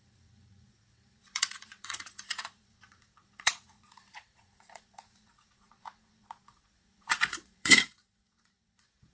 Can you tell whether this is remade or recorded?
remade